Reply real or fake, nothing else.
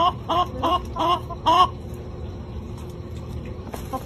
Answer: fake